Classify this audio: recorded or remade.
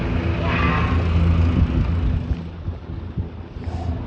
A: recorded